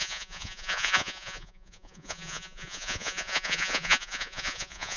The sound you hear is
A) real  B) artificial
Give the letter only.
B